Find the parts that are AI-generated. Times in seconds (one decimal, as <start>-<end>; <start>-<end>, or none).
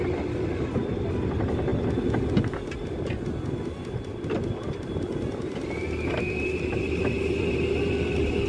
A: none